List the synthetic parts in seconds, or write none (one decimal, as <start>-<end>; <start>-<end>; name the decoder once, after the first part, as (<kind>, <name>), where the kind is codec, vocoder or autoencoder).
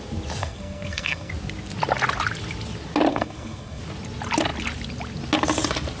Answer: 0.4-1.3 (codec, SNAC); 3.1-3.8